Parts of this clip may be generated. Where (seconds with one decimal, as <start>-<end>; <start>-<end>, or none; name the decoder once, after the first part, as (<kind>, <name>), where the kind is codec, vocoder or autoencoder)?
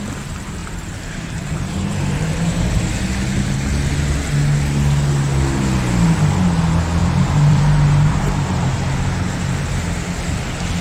0.6-2.8 (vocoder, BigVGAN v2); 7.0-9.7